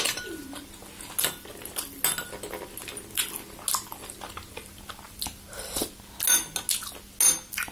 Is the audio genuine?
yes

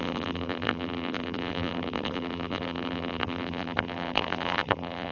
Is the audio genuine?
no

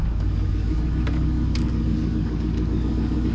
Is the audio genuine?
no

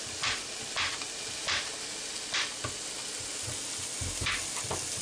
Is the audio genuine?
yes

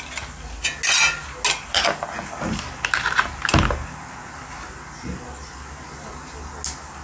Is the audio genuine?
yes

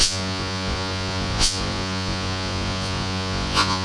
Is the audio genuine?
no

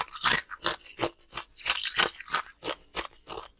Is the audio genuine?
yes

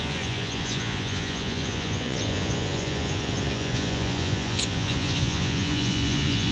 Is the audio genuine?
no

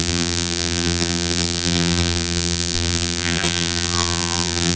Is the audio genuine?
no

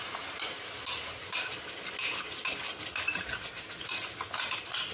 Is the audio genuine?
yes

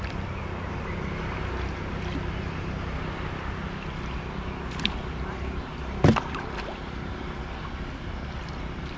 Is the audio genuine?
yes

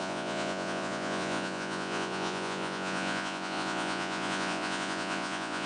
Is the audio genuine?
no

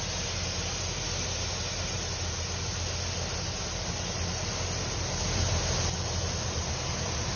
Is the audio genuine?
yes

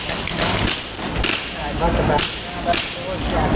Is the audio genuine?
yes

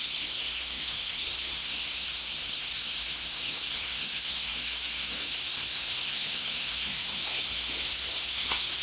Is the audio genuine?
no